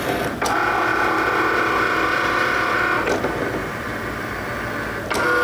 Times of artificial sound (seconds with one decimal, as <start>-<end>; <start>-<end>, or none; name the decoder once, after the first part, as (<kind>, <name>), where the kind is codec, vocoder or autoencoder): 0.9-3.2 (vocoder, BigVGAN v2); 3.6-4.4